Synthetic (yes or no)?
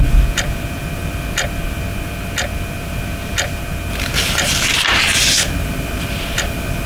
yes